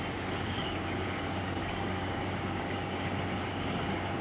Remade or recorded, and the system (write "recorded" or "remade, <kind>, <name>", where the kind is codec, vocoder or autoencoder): remade, codec, DAC